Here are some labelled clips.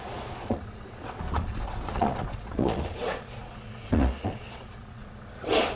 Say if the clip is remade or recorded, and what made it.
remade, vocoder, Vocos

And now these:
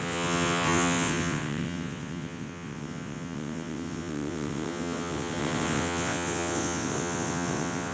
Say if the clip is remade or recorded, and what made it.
remade, vocoder, WaveNeXt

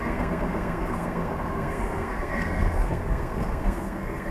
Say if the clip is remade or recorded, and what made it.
remade, codec, SNAC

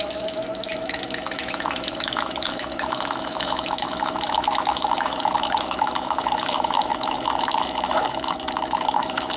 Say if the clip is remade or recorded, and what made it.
remade, autoencoder, DAC-VAE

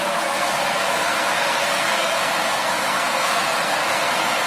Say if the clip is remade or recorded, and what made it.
remade, codec, SNAC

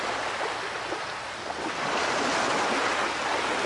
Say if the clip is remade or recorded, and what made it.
recorded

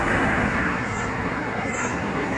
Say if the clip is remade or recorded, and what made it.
remade, codec, SNAC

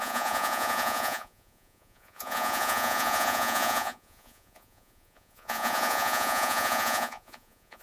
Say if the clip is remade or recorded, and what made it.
remade, vocoder, Vocos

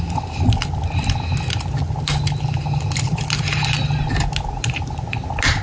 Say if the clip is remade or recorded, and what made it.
recorded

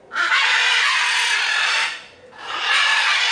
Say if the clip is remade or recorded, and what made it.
recorded